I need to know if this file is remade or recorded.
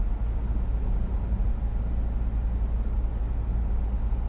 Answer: recorded